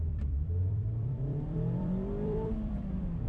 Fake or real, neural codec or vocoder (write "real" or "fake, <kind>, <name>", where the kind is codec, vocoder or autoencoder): fake, vocoder, BigVGAN v2